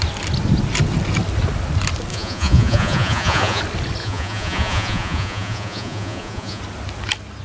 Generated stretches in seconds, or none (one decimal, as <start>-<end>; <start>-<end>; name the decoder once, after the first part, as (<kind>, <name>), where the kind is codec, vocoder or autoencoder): 2.1-3.6 (vocoder, Vocos); 4.0-6.6